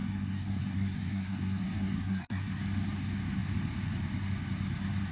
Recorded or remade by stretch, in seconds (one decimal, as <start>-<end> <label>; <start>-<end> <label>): 0.0-2.6 remade; 2.6-5.1 recorded